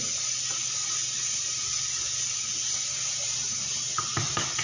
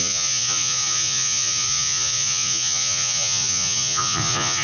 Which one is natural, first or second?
first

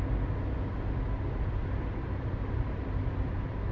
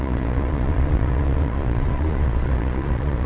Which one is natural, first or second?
first